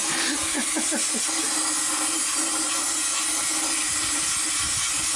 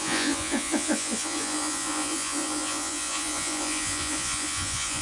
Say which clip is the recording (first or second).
first